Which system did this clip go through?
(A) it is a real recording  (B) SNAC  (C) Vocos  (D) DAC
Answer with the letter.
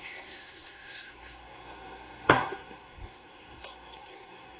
B